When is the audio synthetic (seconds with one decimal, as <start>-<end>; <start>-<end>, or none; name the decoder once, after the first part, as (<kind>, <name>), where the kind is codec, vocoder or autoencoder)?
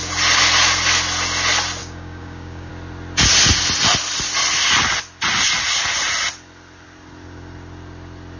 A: 1.8-2.7 (codec, DAC)